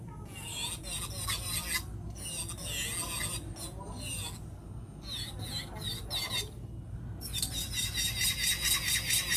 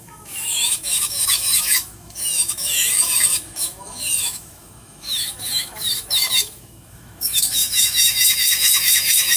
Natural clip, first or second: first